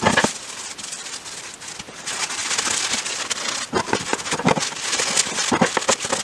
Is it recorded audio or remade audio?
recorded